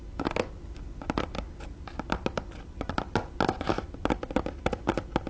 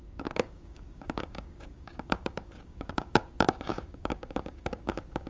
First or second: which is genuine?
first